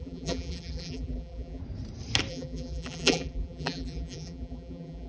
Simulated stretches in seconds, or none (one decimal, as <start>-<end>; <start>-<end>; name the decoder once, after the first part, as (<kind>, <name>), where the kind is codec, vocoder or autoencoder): 0.0-1.6 (vocoder, BigVGAN v2); 2.3-5.1